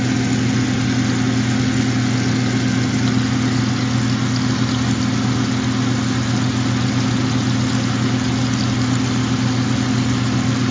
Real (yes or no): yes